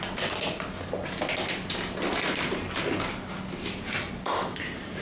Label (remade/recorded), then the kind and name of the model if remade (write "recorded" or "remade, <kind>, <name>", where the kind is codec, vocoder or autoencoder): recorded